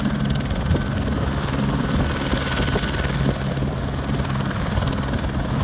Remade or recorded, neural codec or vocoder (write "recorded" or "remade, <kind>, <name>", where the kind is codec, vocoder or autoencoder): recorded